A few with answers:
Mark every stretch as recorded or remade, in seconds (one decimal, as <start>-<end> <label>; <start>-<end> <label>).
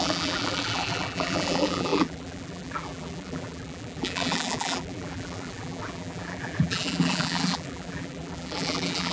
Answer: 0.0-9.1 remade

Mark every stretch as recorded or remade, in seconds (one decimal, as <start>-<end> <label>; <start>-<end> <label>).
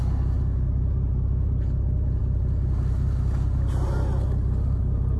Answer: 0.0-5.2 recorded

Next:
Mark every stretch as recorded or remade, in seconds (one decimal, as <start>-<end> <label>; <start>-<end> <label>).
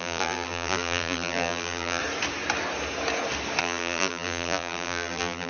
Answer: 0.0-2.0 remade; 2.0-3.6 recorded; 3.6-5.5 remade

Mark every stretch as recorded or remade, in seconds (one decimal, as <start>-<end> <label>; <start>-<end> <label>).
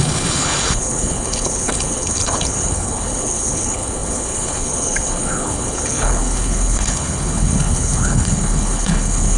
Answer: 0.0-9.4 remade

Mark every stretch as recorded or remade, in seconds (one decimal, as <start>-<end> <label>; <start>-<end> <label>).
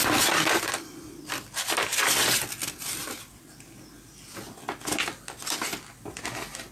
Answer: 0.0-6.7 recorded